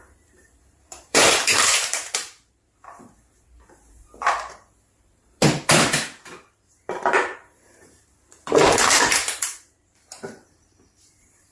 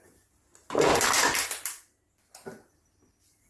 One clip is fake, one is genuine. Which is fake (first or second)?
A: first